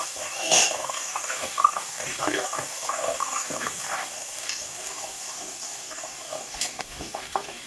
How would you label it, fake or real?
fake